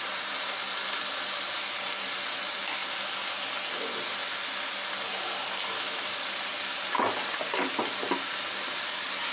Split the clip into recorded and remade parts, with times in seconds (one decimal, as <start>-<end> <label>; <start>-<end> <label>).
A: 0.0-9.3 recorded